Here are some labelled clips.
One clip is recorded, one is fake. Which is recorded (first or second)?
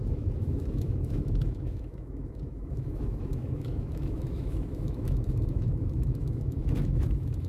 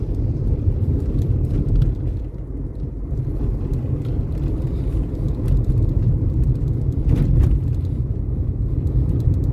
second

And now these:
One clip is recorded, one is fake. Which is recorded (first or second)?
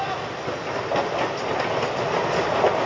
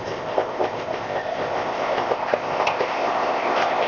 first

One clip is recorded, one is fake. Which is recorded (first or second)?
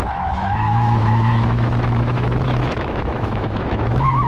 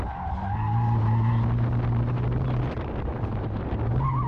second